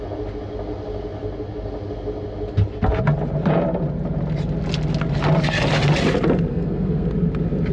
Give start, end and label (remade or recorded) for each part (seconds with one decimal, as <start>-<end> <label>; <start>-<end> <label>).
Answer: 0.0-6.5 recorded; 6.5-7.1 remade; 7.1-7.7 recorded